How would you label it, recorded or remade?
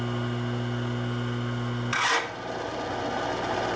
recorded